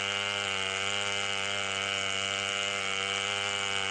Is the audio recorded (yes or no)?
yes